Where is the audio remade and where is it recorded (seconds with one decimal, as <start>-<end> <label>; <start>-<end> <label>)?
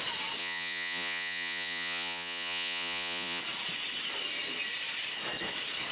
0.0-0.4 recorded; 0.4-3.4 remade; 3.4-5.9 recorded